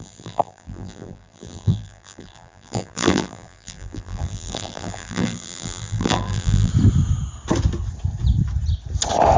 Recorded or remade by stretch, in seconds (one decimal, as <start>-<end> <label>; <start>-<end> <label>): 0.0-6.7 remade; 6.7-9.4 recorded